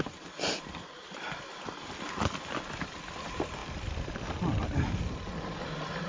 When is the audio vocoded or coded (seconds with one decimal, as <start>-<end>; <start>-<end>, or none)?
0.0-1.7; 3.6-4.3